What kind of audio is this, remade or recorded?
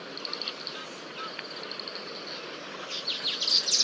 recorded